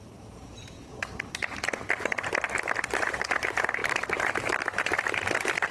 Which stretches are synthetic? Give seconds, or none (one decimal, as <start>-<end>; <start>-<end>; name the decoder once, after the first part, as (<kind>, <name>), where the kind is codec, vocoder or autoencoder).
3.8-4.8 (vocoder, BigVGAN v2)